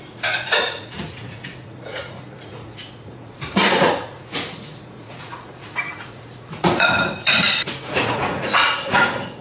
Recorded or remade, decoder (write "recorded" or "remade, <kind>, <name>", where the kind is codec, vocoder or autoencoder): remade, vocoder, Vocos